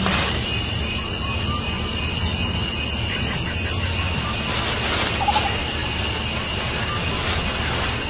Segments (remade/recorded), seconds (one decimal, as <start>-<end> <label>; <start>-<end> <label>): 0.0-8.1 recorded